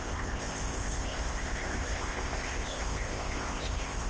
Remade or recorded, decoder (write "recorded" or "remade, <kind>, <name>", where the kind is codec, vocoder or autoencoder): remade, codec, ZipCodec